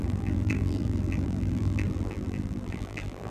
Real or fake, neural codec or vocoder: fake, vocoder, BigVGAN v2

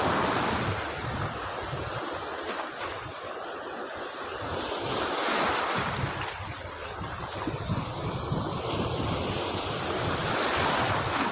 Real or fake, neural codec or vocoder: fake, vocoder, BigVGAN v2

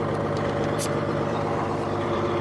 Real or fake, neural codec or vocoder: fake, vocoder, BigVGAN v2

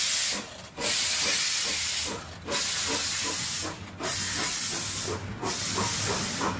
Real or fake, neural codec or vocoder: real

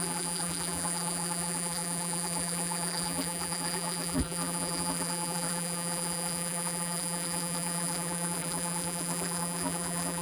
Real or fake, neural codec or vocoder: fake, vocoder, BigVGAN v2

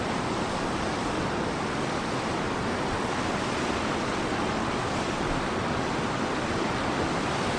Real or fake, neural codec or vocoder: real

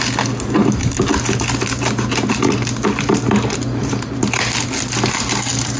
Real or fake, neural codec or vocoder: real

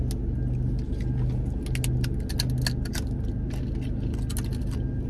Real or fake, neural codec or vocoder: real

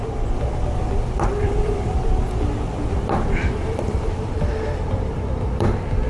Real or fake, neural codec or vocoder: fake, vocoder, BigVGAN v2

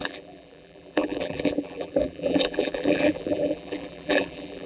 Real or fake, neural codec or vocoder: fake, vocoder, BigVGAN v2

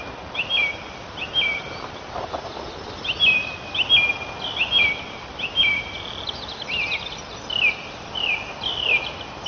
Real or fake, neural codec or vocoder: real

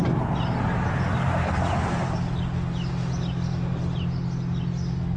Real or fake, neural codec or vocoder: real